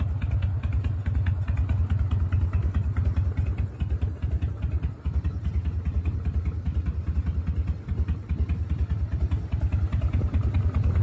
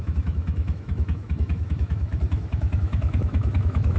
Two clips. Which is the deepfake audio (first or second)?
second